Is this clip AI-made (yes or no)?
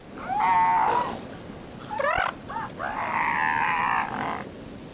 no